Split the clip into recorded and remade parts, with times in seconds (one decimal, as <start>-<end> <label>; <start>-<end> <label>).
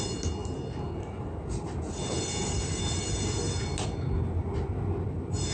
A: 0.0-5.5 recorded